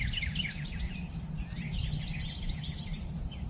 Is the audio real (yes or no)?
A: yes